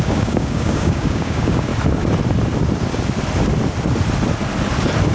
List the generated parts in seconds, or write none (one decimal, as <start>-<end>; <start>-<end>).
0.0-1.7